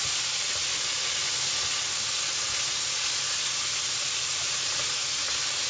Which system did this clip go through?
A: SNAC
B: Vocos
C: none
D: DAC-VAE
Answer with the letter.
C